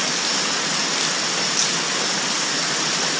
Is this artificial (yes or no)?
no